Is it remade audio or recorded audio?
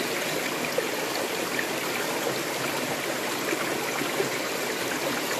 recorded